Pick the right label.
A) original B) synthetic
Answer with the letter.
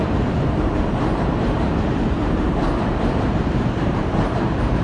B